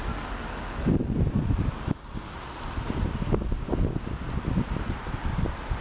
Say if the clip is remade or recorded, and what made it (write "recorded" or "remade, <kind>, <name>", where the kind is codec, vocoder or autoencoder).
recorded